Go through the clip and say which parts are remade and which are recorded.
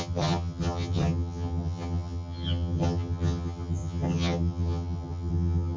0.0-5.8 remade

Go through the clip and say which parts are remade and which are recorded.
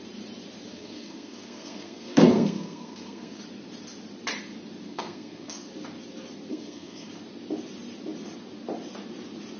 0.0-0.7 recorded; 0.7-3.4 remade; 3.4-4.9 recorded; 4.9-5.7 remade; 5.7-6.5 recorded; 6.5-7.1 remade; 7.1-9.6 recorded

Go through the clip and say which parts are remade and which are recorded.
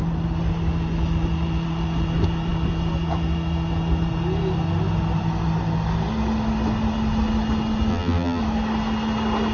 0.0-7.9 recorded; 7.9-8.4 remade; 8.4-9.5 recorded